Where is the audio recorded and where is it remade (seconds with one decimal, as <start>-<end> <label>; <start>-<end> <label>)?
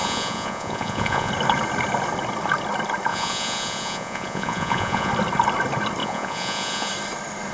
0.0-1.3 remade; 1.3-3.1 recorded; 3.1-5.1 remade; 5.1-6.0 recorded; 6.0-6.9 remade; 6.9-7.5 recorded